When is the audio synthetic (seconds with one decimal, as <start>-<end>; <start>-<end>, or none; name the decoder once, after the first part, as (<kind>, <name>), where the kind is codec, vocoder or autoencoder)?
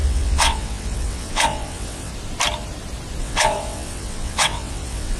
0.0-2.1 (vocoder, WaveNeXt); 3.2-5.2